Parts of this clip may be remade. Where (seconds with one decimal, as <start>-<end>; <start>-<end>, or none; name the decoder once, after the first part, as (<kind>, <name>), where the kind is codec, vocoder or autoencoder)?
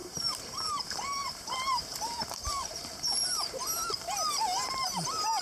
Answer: 0.0-3.6 (vocoder, BigVGAN v2); 4.3-5.4